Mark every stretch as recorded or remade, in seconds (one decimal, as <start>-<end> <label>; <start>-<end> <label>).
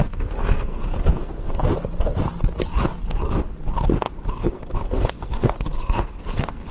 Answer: 0.0-1.6 remade; 1.6-4.3 recorded; 4.3-6.7 remade